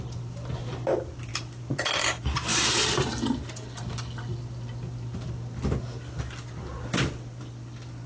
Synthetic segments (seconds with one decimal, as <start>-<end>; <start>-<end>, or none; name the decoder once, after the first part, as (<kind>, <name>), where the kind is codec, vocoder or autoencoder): none